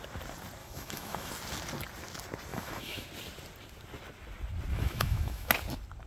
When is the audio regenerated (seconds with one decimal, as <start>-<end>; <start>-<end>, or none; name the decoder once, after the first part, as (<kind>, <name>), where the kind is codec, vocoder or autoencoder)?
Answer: 0.6-1.3 (autoencoder, DAC-VAE); 2.5-3.1; 4.7-5.5